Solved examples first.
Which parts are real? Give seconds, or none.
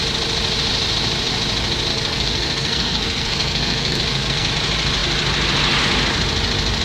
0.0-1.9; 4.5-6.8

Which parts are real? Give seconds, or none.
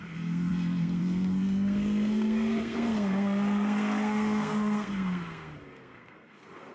none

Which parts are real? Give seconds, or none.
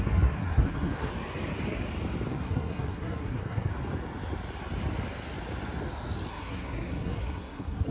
1.1-2.3; 3.7-6.3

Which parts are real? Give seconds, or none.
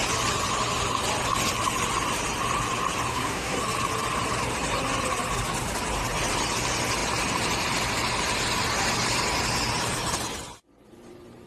0.0-3.1; 3.6-11.5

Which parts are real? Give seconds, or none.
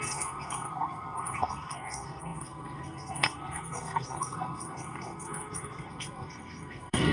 none